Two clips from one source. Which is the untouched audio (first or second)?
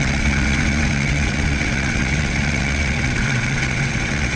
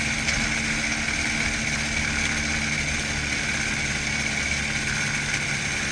second